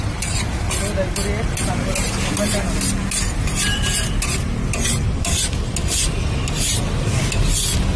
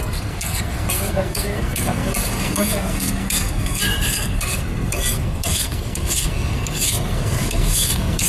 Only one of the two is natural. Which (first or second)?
first